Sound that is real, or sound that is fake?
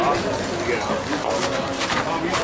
real